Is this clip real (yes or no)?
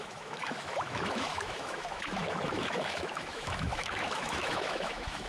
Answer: no